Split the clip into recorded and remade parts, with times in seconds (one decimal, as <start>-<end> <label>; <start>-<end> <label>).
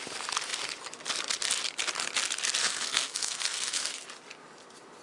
0.0-2.6 recorded; 2.6-3.9 remade; 3.9-5.0 recorded